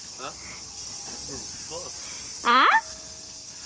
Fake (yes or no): no